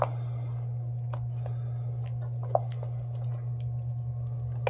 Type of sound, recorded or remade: recorded